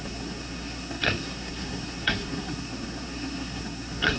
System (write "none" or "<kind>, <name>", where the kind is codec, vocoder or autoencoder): codec, SNAC